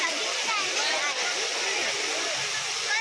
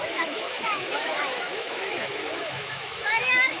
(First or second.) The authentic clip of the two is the first